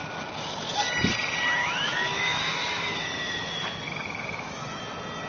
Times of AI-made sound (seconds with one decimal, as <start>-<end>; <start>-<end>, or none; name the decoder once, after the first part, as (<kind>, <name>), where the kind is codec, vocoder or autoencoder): 1.6-4.8 (autoencoder, DAC-VAE)